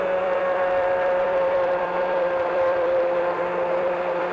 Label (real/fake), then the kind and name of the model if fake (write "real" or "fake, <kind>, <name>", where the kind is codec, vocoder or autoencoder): fake, vocoder, BigVGAN v2